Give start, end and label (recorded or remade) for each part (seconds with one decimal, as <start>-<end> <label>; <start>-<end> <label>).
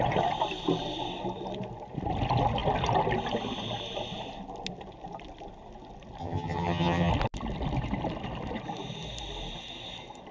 0.0-6.2 recorded; 6.2-7.1 remade; 7.1-10.3 recorded